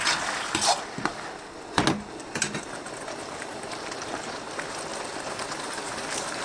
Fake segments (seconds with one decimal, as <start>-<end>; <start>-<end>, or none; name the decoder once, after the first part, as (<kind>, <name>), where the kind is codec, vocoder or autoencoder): none